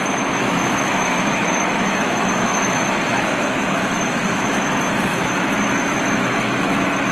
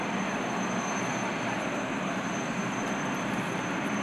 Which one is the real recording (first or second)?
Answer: second